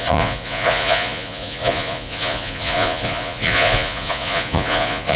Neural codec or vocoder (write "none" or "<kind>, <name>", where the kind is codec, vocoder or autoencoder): vocoder, Vocos